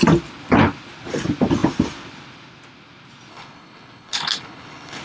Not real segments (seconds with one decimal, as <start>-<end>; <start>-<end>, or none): 3.3-5.0